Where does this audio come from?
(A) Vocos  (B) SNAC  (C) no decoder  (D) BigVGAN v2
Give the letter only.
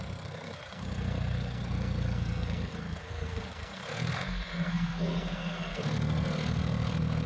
B